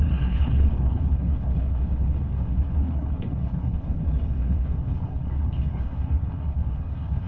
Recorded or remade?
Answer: remade